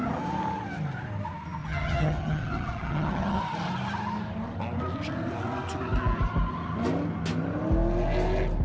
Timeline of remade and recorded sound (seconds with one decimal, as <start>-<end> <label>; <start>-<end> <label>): 0.0-1.6 recorded; 1.6-3.4 remade; 3.4-8.6 recorded